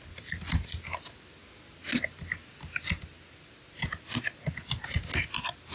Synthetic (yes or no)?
no